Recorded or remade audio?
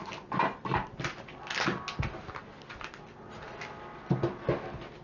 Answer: recorded